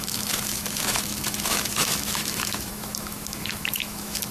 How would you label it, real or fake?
fake